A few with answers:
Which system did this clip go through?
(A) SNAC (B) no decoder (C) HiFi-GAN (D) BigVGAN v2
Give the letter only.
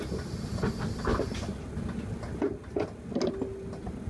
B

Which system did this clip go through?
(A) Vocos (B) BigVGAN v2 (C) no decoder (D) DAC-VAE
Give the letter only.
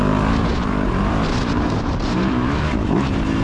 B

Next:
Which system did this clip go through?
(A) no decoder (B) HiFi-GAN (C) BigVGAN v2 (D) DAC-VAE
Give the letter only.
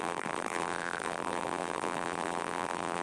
C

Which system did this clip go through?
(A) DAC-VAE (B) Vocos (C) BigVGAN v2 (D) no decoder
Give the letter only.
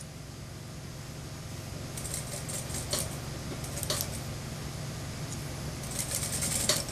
D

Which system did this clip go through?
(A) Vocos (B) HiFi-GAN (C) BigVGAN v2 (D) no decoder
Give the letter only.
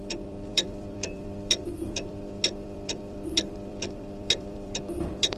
C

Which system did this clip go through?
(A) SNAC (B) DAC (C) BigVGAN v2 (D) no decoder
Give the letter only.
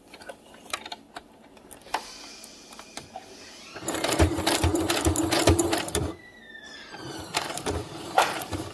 C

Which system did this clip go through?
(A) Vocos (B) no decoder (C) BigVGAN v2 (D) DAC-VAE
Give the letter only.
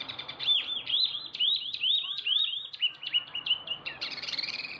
C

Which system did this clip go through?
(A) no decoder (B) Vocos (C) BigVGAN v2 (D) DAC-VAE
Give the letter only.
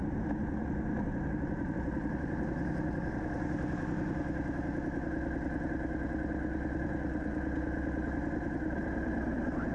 A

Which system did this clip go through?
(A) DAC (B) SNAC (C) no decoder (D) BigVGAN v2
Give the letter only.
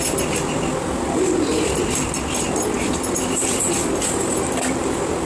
C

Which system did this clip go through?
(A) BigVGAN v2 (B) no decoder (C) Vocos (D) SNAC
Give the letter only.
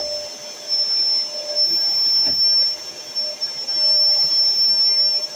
B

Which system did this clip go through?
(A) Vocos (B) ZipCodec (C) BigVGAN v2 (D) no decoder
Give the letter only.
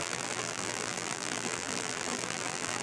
C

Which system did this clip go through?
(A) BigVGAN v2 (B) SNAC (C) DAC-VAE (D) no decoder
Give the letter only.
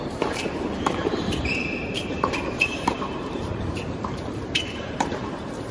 A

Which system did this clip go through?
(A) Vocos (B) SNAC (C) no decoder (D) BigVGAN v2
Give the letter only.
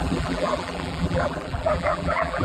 D